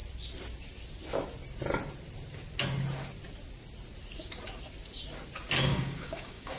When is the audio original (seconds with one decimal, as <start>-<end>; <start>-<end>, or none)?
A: 0.0-5.7